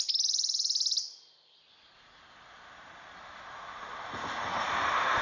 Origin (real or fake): real